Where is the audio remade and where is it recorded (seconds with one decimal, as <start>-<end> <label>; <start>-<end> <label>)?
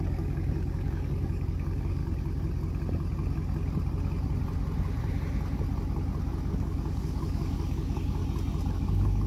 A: 0.0-2.0 remade; 2.0-6.5 recorded; 6.5-8.2 remade; 8.2-8.7 recorded; 8.7-9.3 remade